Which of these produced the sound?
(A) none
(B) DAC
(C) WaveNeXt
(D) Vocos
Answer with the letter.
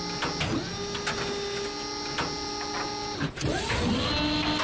A